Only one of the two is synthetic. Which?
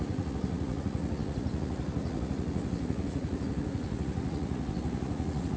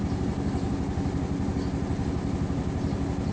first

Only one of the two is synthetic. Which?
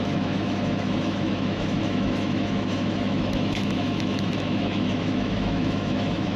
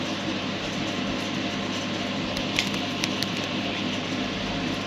first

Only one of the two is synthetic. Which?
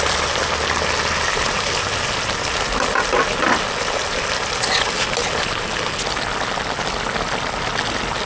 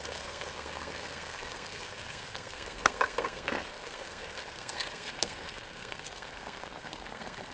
second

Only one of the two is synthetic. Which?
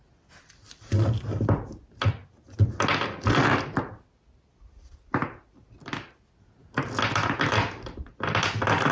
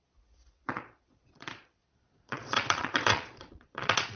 second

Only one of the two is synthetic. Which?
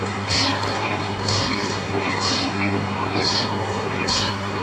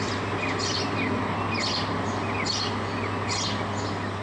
first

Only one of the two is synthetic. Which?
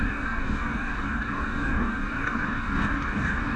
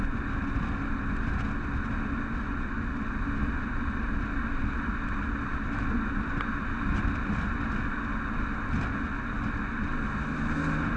first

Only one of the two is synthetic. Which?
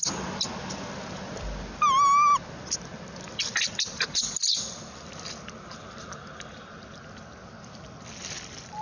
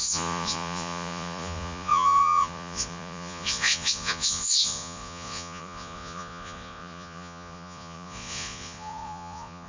second